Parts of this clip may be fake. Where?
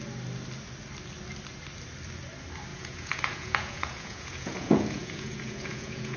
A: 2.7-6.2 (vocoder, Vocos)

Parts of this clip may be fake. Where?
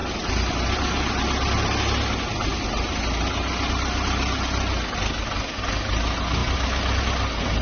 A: none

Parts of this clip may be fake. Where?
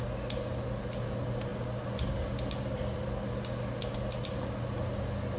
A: none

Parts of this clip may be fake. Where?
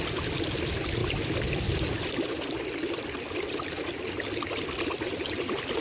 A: none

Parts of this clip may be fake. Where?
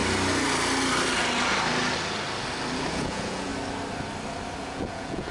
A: 2.9-3.5 (vocoder, Vocos); 4.6-5.3